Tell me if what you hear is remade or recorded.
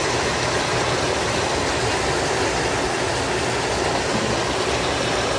recorded